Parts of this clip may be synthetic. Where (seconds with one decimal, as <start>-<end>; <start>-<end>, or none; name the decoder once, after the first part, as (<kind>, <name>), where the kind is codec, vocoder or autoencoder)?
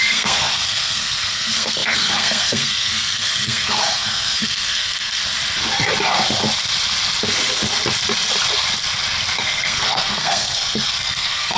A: 0.0-5.2 (codec, SNAC); 9.4-11.6